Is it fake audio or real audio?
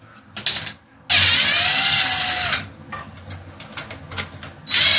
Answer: real